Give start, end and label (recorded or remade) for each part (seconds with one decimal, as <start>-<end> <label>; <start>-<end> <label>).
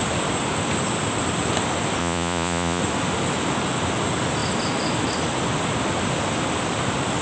0.0-2.0 recorded; 2.0-2.8 remade; 2.8-7.2 recorded